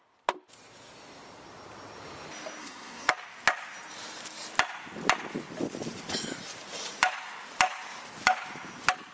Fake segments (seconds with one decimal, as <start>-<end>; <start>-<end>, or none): 2.6-3.1